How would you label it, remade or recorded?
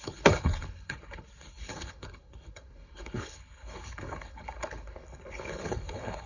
remade